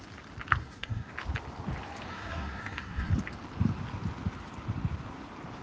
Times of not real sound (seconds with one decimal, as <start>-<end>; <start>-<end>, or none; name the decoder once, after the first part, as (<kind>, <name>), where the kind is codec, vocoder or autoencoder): 0.6-1.1 (codec, SNAC); 2.1-3.1